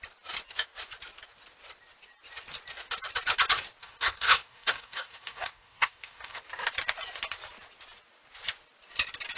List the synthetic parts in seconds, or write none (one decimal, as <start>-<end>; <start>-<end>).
3.8-6.4